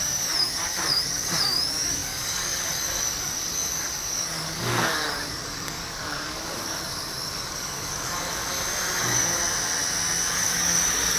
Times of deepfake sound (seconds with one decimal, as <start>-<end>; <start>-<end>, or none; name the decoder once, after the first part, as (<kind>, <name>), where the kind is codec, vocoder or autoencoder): 0.0-8.4 (codec, DAC); 9.0-9.4; 10.3-11.2